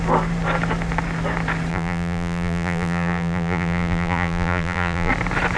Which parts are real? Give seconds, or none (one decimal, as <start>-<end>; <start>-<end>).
0.0-1.7; 5.1-5.6